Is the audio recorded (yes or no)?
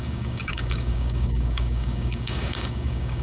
no